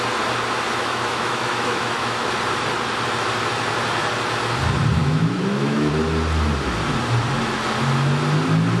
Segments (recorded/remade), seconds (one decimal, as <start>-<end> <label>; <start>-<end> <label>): 0.0-0.8 recorded; 0.8-2.3 remade; 2.3-5.0 recorded; 5.0-5.9 remade; 5.9-8.8 recorded